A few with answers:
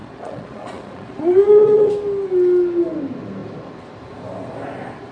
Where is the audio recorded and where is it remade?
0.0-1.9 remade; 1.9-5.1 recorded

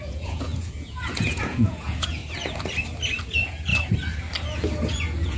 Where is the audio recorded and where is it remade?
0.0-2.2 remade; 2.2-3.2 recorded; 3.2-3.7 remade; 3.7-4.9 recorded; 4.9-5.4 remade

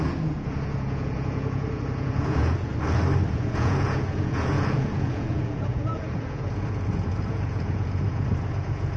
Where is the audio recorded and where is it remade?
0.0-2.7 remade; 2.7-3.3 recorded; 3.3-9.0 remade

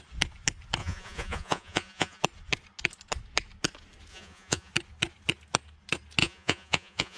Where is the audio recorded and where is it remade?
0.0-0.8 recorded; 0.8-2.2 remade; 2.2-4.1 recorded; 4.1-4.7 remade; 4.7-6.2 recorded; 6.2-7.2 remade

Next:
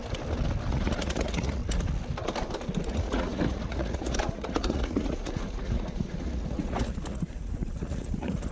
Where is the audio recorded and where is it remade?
0.0-0.7 recorded; 0.7-1.6 remade; 1.6-2.8 recorded; 2.8-8.5 remade

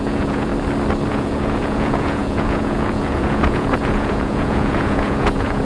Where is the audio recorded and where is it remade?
0.0-0.5 remade; 0.5-1.1 recorded; 1.1-5.6 remade